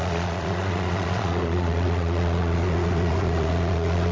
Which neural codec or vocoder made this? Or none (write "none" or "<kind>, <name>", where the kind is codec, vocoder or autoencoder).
vocoder, Vocos